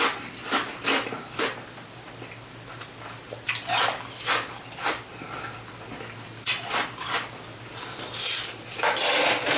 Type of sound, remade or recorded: recorded